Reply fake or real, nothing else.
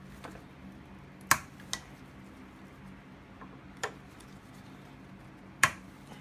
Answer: real